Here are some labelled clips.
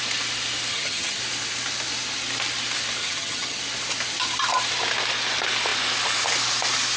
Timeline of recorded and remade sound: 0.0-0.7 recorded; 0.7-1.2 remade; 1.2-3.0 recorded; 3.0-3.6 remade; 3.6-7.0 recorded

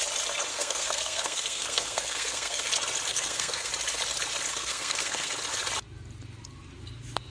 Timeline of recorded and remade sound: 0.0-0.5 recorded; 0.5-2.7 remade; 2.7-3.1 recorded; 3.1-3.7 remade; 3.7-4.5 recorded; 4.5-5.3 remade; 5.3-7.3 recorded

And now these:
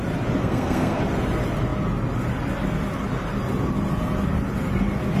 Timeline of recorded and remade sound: 0.0-0.4 recorded; 0.4-1.0 remade; 1.0-5.2 recorded

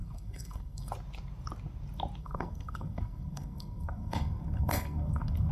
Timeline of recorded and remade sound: 0.0-0.9 remade; 0.9-2.2 recorded; 2.2-5.5 remade

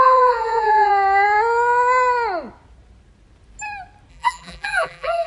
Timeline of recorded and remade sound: 0.0-0.9 remade; 0.9-4.1 recorded; 4.1-5.3 remade

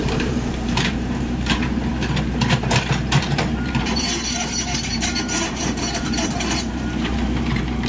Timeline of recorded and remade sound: 0.0-1.9 remade; 1.9-2.6 recorded; 2.6-7.9 remade